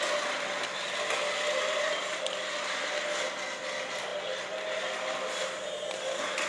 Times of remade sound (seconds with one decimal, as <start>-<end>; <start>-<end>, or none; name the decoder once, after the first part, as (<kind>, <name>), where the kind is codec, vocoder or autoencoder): none